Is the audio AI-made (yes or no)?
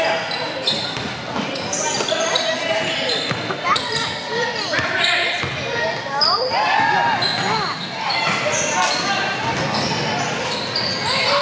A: no